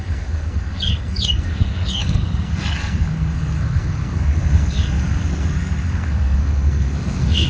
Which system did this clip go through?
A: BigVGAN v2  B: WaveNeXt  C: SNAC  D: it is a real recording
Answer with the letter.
C